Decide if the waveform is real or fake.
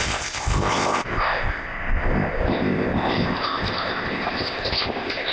fake